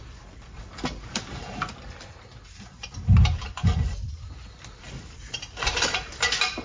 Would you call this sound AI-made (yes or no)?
yes